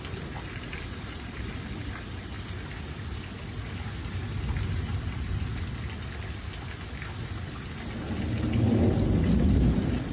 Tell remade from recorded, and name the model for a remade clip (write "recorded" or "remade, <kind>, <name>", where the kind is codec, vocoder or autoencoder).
recorded